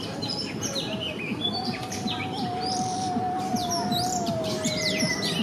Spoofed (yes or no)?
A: yes